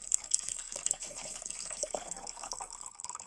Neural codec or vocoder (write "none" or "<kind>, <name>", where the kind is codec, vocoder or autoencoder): codec, SNAC